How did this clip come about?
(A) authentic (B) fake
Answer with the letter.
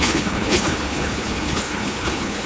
B